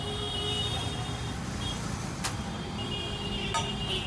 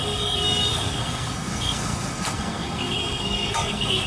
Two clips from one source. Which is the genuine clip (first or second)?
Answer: first